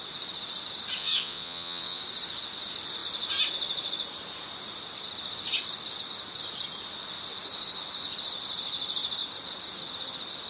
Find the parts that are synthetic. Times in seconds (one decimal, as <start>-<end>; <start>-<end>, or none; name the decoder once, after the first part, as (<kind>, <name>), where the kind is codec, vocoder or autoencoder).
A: 1.0-2.0 (vocoder, Vocos)